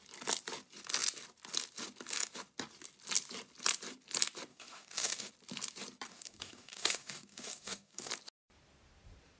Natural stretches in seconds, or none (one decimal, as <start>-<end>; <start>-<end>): 0.0-4.5; 5.3-6.1; 8.1-9.4